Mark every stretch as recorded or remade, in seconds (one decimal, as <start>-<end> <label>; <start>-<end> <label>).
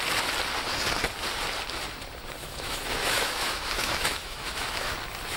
0.0-2.4 recorded; 2.4-4.9 remade; 4.9-5.4 recorded